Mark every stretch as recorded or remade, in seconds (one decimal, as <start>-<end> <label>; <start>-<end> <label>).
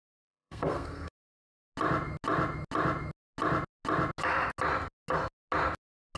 0.0-1.1 remade; 1.1-6.2 recorded